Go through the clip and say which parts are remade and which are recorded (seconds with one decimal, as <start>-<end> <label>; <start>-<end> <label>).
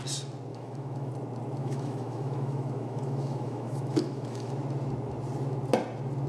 0.0-0.5 recorded; 0.5-1.1 remade; 1.1-1.6 recorded; 1.6-4.5 remade; 4.5-6.3 recorded